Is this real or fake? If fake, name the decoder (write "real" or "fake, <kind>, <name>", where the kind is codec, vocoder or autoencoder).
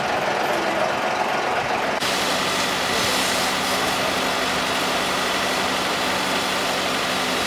real